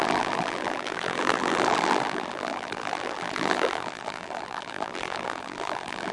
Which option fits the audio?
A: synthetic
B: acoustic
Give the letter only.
A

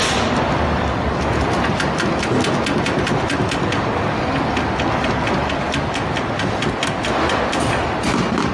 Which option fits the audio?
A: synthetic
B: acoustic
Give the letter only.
B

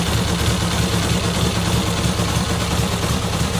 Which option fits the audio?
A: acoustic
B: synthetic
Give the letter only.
A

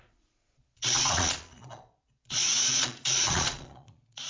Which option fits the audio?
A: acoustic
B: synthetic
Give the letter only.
B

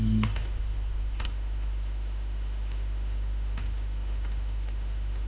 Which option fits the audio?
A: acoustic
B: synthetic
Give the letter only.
B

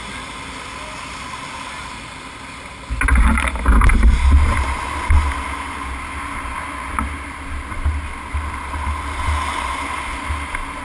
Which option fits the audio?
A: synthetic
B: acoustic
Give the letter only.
B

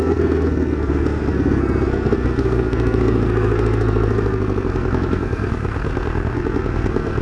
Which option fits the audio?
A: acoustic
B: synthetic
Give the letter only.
B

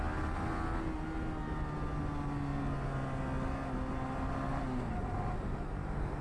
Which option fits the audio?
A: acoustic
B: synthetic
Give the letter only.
A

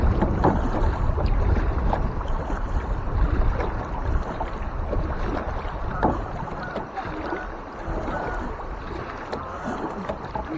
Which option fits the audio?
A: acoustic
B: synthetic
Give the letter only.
B